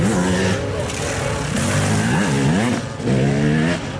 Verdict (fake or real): real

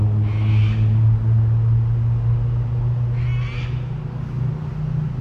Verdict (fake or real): real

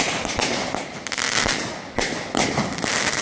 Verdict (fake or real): real